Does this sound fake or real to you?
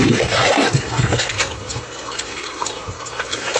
fake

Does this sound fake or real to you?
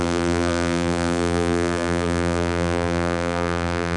fake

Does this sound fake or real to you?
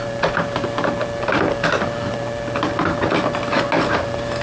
real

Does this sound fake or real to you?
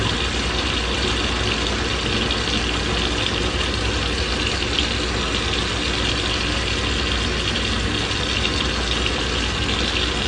real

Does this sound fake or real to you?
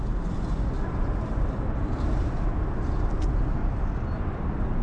real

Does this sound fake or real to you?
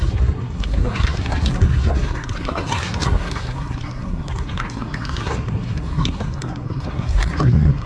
fake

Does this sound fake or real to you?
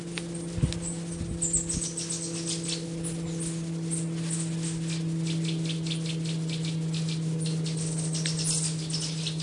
real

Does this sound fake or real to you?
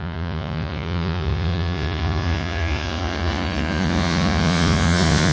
fake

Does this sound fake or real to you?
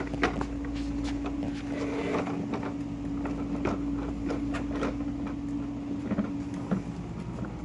real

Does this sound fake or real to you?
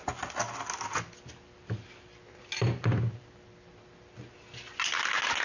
real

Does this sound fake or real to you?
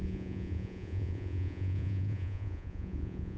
fake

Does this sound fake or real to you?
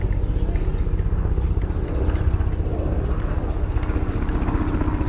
real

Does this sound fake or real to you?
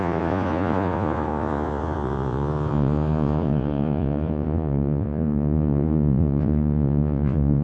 fake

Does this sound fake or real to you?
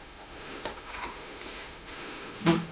fake